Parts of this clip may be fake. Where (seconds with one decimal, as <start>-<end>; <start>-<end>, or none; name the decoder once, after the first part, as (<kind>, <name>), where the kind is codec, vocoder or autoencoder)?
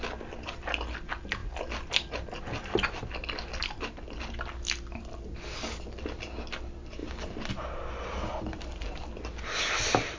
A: none